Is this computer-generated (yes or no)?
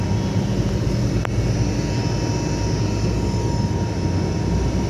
no